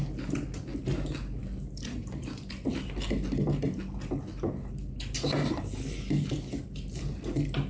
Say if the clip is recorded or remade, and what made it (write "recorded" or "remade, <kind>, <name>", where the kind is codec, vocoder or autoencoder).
recorded